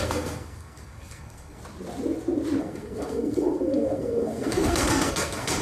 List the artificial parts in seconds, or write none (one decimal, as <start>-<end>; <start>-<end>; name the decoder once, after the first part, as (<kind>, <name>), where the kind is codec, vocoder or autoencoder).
0.0-1.6 (codec, SNAC); 2.6-5.6